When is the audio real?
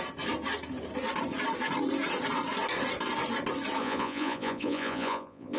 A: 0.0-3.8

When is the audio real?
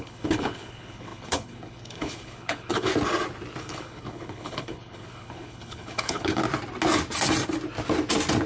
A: 2.9-3.6; 6.4-8.5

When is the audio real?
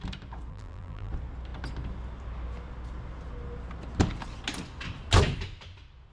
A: 0.0-0.5; 1.1-6.1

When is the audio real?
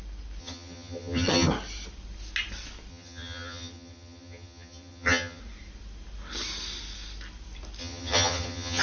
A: 0.0-0.4; 1.5-2.9; 5.4-7.8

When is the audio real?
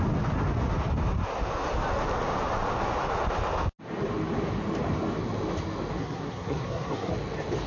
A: 0.0-6.0; 7.1-7.7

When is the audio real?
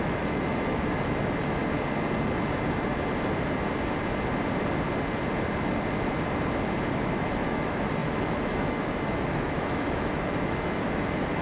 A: 1.6-6.9